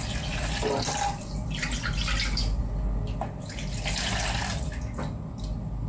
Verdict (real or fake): real